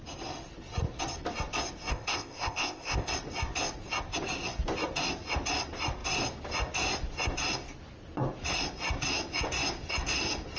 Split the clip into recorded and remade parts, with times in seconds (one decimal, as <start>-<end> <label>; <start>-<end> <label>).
0.0-1.9 recorded; 1.9-3.1 remade; 3.1-10.6 recorded

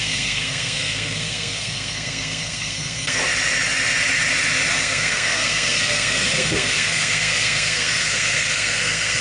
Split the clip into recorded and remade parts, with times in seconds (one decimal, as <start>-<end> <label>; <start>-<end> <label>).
0.0-3.2 remade; 3.2-4.8 recorded; 4.8-9.2 remade

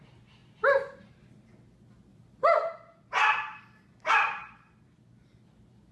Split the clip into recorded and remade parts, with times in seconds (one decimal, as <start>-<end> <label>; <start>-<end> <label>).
0.0-2.1 recorded; 2.1-4.1 remade; 4.1-5.9 recorded

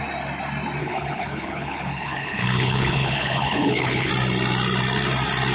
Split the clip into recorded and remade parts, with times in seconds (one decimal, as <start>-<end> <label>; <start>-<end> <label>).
0.0-0.8 recorded; 0.8-4.1 remade; 4.1-5.5 recorded

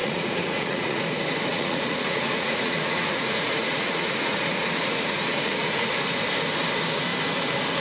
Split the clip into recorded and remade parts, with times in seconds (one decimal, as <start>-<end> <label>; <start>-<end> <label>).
0.0-1.0 remade; 1.0-1.5 recorded; 1.5-5.9 remade; 5.9-7.8 recorded

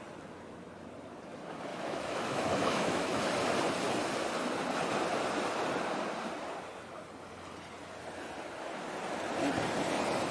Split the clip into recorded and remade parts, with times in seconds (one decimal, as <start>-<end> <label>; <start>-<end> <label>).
0.0-1.7 recorded; 1.7-3.2 remade; 3.2-10.3 recorded

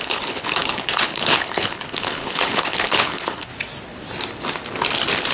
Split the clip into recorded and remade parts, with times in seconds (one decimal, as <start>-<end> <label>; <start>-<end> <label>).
0.0-3.5 remade; 3.5-5.3 recorded

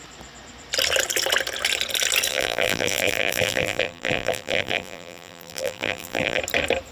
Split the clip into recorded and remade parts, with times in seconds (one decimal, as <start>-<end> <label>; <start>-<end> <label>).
0.0-2.3 recorded; 2.3-6.4 remade; 6.4-6.9 recorded